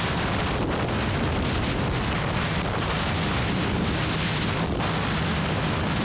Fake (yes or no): yes